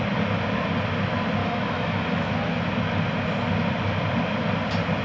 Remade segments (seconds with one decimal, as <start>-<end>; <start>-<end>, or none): 1.4-2.3